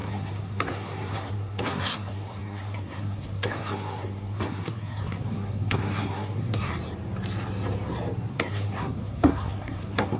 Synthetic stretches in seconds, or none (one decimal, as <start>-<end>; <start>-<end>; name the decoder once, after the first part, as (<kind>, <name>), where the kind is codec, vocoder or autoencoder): 0.0-6.7 (codec, SNAC); 8.3-10.2